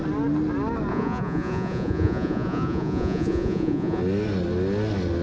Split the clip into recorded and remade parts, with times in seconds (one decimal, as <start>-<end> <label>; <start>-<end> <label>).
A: 0.0-0.9 recorded; 0.9-4.0 remade; 4.0-5.2 recorded

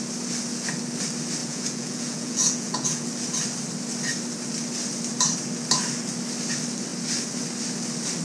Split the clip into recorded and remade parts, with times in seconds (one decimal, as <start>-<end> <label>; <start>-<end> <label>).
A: 0.0-1.4 recorded; 1.4-3.1 remade; 3.1-8.2 recorded

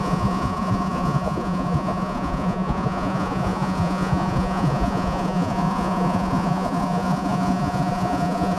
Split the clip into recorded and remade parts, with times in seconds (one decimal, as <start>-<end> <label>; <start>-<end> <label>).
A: 0.0-8.6 remade

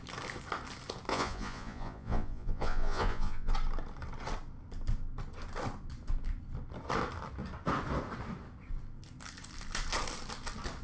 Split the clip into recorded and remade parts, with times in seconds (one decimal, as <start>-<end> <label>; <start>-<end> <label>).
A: 0.0-1.1 recorded; 1.1-3.5 remade; 3.5-10.8 recorded

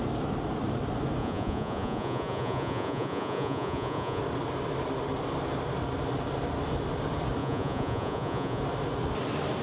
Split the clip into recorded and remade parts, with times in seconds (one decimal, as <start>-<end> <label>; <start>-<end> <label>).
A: 0.0-1.2 recorded; 1.2-4.2 remade; 4.2-7.4 recorded; 7.4-8.6 remade; 8.6-9.6 recorded